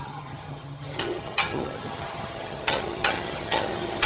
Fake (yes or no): yes